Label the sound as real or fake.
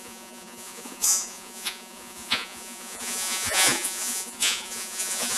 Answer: fake